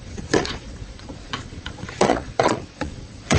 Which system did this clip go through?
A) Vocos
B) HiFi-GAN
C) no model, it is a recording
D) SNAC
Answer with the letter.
A